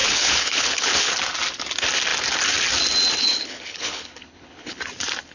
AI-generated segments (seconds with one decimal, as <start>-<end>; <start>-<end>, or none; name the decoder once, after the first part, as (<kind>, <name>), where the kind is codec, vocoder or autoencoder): 0.0-1.1 (codec, HILCodec); 3.2-4.8